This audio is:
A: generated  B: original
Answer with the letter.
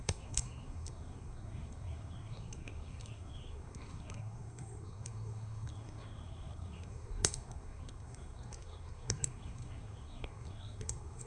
A